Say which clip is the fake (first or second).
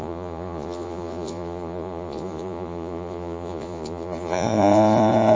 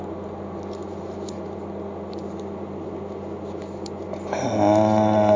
first